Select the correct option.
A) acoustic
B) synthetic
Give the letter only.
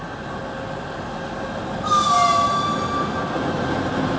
A